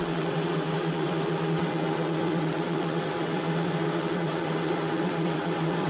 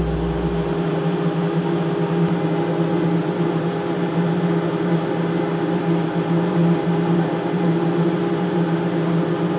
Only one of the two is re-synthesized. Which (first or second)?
first